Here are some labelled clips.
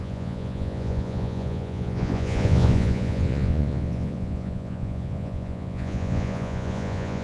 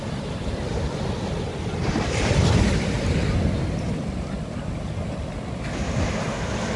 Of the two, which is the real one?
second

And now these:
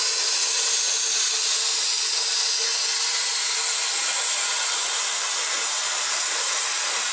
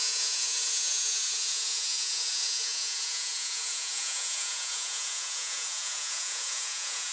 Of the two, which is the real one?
first